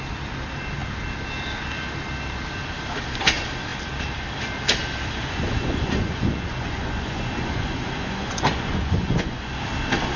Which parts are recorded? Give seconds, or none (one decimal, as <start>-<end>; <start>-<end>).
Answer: 0.0-5.2; 9.5-10.2